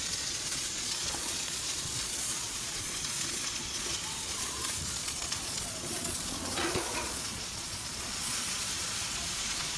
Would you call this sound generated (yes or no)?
yes